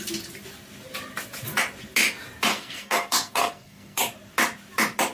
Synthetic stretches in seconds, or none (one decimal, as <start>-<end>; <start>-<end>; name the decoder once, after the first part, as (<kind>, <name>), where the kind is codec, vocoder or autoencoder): 2.5-4.0 (codec, SNAC)